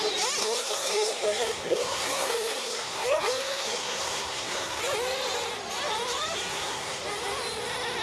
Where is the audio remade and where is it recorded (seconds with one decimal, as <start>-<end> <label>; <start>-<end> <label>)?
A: 0.0-0.4 recorded; 0.4-4.8 remade; 4.8-6.5 recorded; 6.5-7.0 remade; 7.0-8.0 recorded